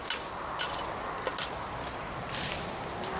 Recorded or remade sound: recorded